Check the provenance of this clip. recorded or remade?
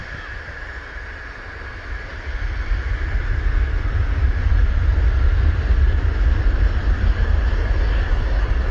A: recorded